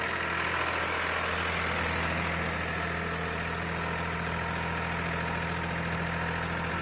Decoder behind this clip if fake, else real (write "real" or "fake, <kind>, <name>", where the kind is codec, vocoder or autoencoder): real